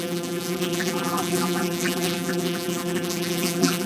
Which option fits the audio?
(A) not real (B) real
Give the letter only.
A